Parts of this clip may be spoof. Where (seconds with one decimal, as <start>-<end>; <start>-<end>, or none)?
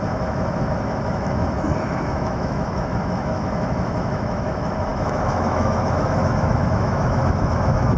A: 0.0-8.0